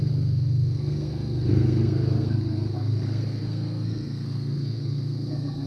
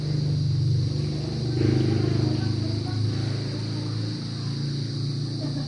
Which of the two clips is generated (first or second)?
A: first